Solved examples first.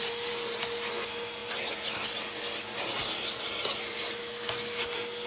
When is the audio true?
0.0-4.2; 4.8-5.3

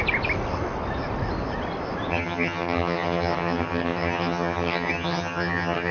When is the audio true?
0.0-2.1

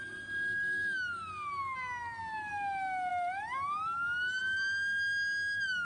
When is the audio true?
0.0-5.8

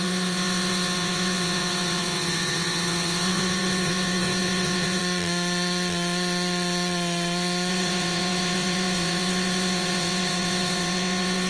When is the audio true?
5.0-7.7

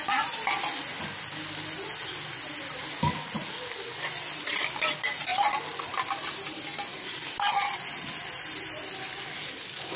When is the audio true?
0.0-10.0

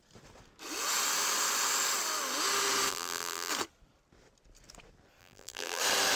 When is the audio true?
0.0-2.9; 3.5-5.2; 5.8-6.2

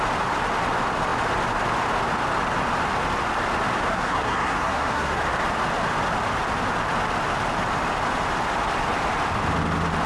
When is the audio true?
0.0-3.9; 5.2-10.1